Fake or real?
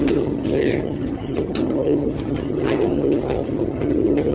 fake